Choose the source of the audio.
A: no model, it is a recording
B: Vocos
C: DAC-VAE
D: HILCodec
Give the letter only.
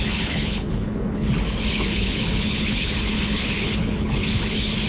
D